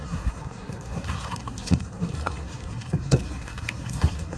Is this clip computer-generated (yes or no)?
yes